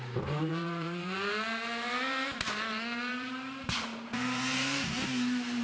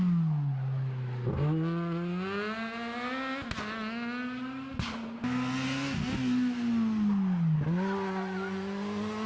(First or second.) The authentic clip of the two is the second